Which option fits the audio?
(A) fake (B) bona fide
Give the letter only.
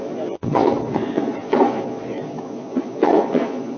A